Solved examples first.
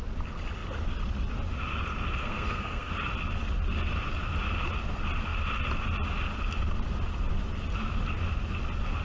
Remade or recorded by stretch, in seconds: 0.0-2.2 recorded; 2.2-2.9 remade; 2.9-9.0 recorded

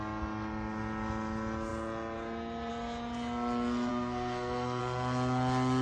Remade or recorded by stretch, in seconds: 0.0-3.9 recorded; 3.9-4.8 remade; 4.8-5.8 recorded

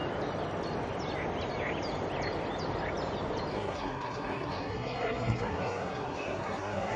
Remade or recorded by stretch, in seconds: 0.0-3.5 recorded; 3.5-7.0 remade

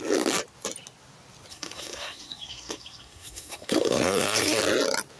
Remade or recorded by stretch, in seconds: 0.0-1.5 recorded; 1.5-4.6 remade; 4.6-5.2 recorded